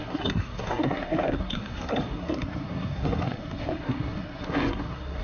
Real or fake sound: fake